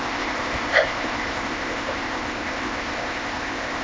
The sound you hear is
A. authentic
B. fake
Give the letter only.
B